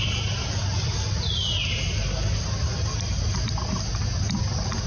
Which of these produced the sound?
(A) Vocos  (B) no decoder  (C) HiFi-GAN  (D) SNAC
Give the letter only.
B